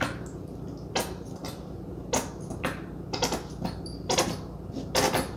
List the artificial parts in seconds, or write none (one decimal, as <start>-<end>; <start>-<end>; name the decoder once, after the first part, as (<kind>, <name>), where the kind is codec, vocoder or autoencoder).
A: none